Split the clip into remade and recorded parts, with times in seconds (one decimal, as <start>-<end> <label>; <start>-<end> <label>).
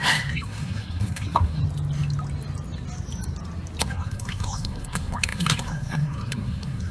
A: 0.0-1.6 remade; 1.6-3.8 recorded; 3.8-6.9 remade